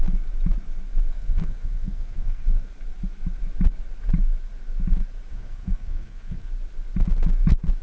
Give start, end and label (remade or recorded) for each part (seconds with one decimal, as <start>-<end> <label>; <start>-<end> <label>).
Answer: 0.0-1.1 recorded; 1.1-2.7 remade; 2.7-5.3 recorded; 5.3-6.5 remade; 6.5-7.8 recorded